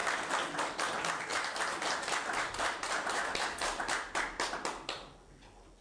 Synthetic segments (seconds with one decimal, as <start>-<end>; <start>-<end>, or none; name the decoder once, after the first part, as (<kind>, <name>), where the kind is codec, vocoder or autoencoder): 1.3-4.5 (vocoder, BigVGAN v2)